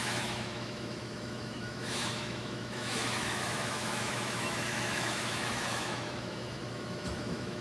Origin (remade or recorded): remade